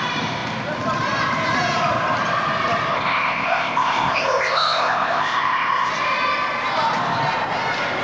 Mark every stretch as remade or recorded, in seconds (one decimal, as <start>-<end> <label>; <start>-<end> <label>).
0.0-2.9 recorded; 2.9-5.9 remade; 5.9-8.0 recorded